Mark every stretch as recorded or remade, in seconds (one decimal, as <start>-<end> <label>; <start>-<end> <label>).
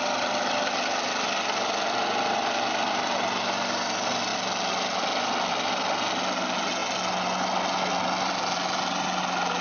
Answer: 0.0-9.6 recorded